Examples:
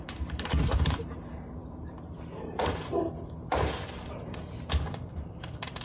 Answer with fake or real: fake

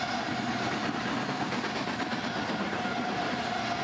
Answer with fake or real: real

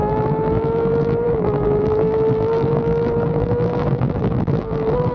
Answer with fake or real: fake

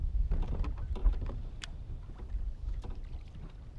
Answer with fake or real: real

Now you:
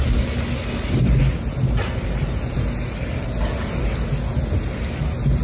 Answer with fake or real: real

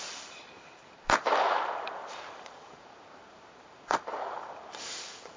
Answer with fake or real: fake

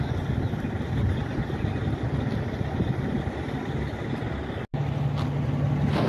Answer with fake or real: real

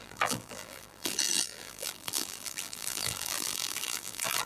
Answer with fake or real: fake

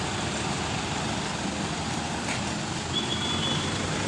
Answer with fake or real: real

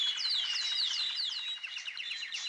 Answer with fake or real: real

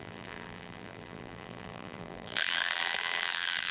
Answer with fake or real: fake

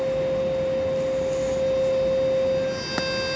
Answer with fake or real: real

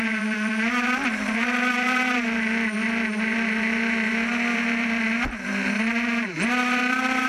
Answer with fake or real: fake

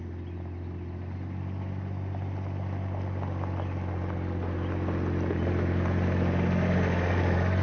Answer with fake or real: real